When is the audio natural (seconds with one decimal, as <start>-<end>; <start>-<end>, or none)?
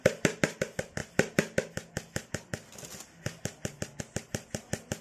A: 0.0-5.0